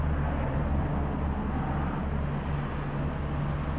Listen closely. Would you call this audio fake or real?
real